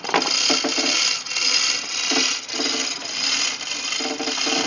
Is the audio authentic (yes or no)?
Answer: yes